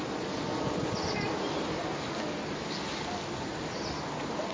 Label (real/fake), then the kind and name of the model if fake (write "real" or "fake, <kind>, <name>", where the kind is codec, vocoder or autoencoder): real